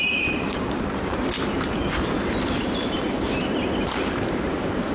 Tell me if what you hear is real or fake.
fake